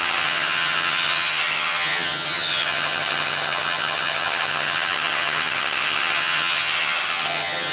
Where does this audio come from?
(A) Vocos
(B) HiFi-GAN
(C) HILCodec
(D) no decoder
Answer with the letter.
B